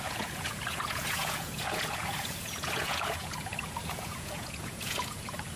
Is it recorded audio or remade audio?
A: remade